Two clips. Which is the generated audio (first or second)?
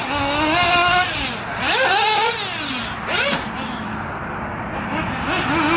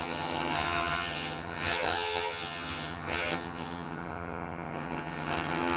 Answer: second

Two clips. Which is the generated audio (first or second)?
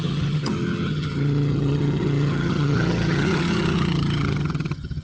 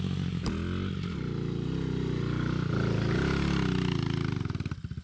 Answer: first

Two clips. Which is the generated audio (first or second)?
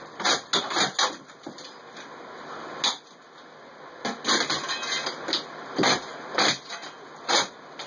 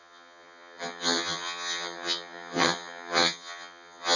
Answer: second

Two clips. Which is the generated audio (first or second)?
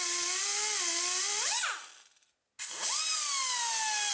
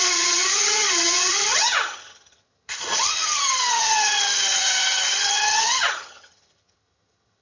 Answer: second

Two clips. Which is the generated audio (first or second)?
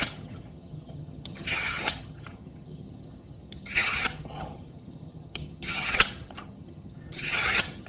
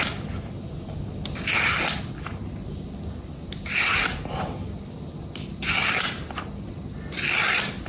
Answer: first